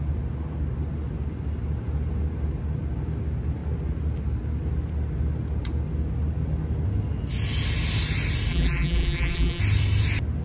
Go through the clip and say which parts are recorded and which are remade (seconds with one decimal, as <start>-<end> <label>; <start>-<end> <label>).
0.0-8.5 recorded; 8.5-9.6 remade; 9.6-10.4 recorded